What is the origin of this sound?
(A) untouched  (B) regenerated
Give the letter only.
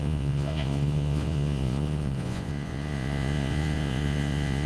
B